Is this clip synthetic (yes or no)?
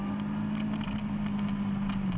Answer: no